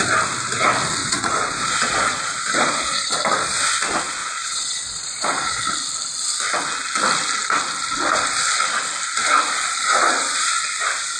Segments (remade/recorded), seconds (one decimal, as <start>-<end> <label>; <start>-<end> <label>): 0.0-1.0 recorded; 1.0-3.2 remade; 3.2-4.2 recorded; 4.2-5.6 remade; 5.6-11.2 recorded